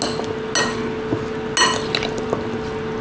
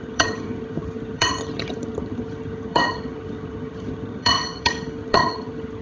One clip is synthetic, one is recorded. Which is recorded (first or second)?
first